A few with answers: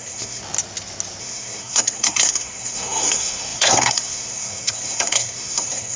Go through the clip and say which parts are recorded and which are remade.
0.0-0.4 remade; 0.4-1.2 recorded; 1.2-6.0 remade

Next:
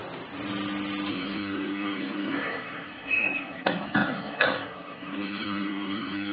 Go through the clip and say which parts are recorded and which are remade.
0.0-1.1 recorded; 1.1-6.3 remade

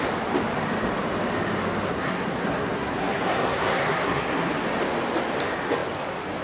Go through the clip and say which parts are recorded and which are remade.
0.0-1.9 recorded; 1.9-4.5 remade; 4.5-6.4 recorded

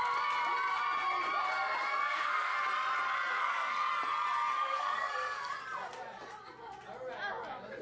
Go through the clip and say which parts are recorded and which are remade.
0.0-1.9 recorded; 1.9-2.6 remade; 2.6-3.3 recorded; 3.3-3.9 remade; 3.9-4.5 recorded; 4.5-5.5 remade; 5.5-7.8 recorded

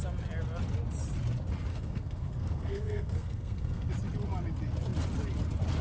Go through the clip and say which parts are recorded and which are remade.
0.0-1.7 recorded; 1.7-3.9 remade; 3.9-5.8 recorded

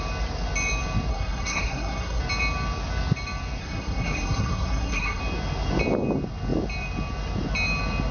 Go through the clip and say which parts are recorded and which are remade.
0.0-1.1 recorded; 1.1-2.2 remade; 2.2-3.6 recorded; 3.6-5.2 remade; 5.2-8.1 recorded

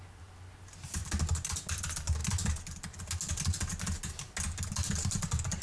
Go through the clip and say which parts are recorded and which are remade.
0.0-5.6 recorded

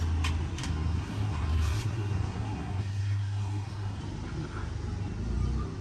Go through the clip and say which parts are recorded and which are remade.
0.0-0.5 recorded; 0.5-4.0 remade; 4.0-5.8 recorded